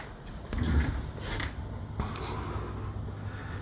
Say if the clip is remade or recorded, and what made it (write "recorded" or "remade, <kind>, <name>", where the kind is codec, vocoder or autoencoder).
recorded